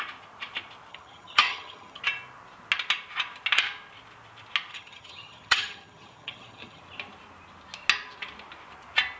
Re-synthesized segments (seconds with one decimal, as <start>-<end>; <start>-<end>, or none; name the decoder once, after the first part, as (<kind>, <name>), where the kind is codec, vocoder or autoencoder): 0.9-2.0 (vocoder, HiFi-GAN); 4.7-6.8